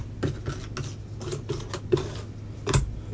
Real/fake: real